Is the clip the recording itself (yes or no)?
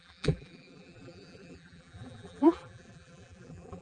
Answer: no